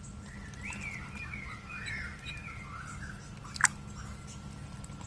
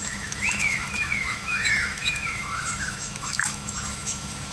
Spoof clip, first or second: second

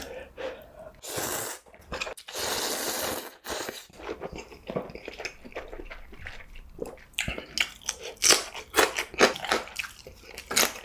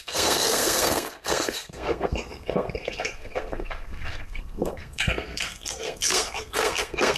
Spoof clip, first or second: second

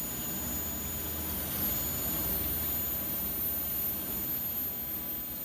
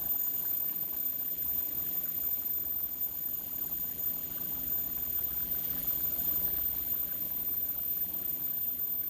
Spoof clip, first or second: second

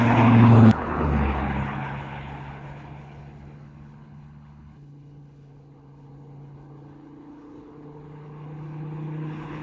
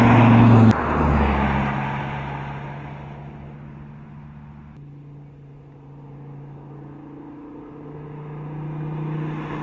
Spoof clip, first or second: first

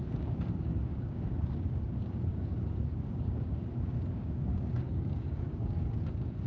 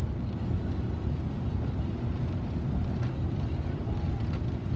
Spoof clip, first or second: first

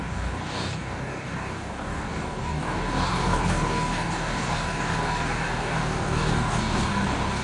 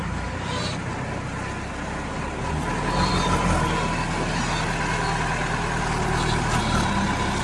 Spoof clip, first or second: first